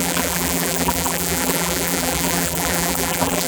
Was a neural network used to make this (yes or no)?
yes